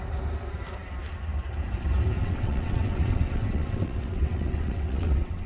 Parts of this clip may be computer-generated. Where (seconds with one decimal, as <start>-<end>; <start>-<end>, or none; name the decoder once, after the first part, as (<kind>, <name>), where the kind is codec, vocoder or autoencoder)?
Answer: 2.2-5.5 (vocoder, WaveNeXt)